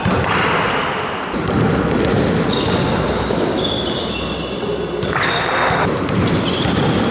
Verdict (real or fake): real